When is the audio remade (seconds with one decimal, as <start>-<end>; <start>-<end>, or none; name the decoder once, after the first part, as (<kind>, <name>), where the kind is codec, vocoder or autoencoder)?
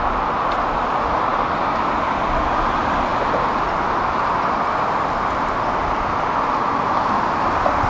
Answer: none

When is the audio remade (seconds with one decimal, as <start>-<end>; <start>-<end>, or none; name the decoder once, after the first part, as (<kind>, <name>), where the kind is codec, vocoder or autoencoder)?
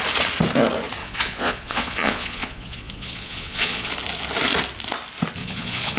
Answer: 1.0-3.9 (vocoder, Vocos); 5.4-6.0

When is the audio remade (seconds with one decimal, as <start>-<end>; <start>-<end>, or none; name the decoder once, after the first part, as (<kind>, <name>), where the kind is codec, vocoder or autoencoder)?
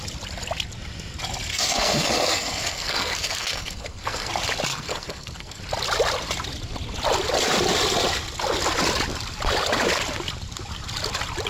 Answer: 1.5-4.3 (codec, SNAC); 4.7-5.6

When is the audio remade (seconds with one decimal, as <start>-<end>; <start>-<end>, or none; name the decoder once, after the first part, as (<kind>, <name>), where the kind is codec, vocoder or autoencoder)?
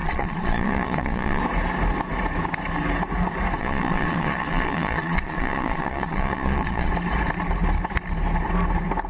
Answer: 0.0-1.4 (vocoder, Vocos); 3.6-6.9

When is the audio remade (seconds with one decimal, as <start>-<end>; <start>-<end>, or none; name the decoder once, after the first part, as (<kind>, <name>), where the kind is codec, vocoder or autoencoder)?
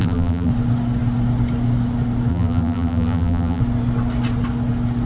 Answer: 0.0-0.5 (vocoder, BigVGAN v2); 2.3-3.6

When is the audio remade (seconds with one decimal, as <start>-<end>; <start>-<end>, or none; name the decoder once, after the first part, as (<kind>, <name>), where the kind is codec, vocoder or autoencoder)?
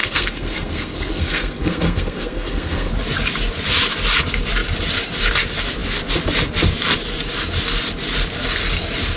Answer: 0.0-2.9 (codec, SNAC)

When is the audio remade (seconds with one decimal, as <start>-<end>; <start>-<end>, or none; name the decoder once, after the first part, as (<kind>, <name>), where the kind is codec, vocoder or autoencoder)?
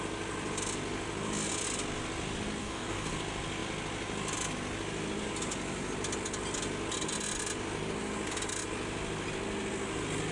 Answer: 2.6-3.1 (codec, DAC)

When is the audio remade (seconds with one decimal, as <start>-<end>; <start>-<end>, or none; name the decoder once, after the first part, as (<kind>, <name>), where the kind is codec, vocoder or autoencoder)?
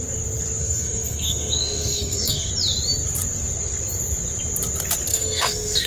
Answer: 0.6-2.5 (codec, SNAC); 5.1-5.9